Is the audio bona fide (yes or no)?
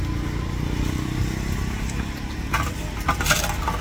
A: no